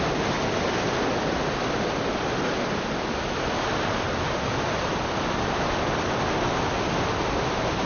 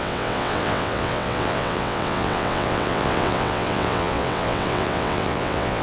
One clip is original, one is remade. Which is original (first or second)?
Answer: first